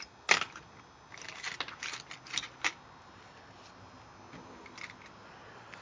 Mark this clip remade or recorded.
recorded